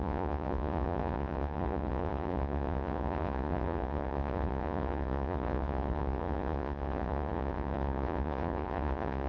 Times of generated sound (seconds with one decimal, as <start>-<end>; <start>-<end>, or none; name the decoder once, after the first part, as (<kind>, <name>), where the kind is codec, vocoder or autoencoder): 0.0-9.3 (vocoder, Vocos)